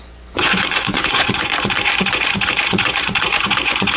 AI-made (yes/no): yes